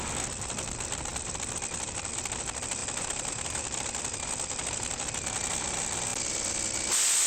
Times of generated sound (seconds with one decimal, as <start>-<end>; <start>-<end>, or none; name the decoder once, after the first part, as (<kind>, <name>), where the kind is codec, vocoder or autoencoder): none